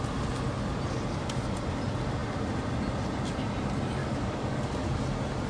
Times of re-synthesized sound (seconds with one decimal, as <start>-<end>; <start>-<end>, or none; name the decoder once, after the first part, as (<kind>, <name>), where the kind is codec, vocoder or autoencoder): 4.0-4.9 (codec, DAC)

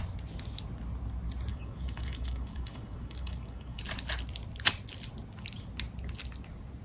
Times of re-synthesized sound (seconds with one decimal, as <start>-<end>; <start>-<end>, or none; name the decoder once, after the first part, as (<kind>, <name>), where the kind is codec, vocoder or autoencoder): 1.5-3.8 (codec, DAC)

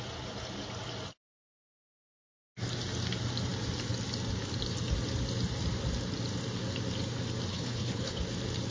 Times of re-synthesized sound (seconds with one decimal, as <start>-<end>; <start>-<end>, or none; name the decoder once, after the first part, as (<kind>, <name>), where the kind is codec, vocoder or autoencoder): 7.5-8.2 (codec, HILCodec)

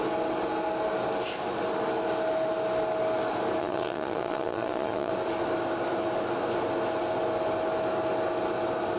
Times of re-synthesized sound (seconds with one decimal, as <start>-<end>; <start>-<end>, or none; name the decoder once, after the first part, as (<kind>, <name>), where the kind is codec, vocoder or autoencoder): 3.6-5.1 (vocoder, Vocos)